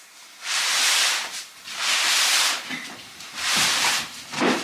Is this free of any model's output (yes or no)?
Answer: no